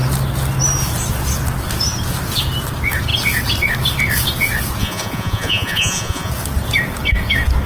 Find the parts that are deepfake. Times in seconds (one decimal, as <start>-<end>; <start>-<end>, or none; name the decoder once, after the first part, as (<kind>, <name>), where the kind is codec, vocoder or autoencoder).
4.8-6.3 (vocoder, Vocos)